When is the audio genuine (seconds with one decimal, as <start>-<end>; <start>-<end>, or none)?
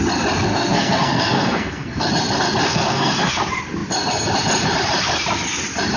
0.0-0.5; 2.1-2.7; 3.4-6.0